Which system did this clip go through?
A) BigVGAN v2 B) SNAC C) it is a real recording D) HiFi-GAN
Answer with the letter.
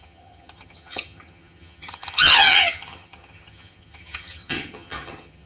D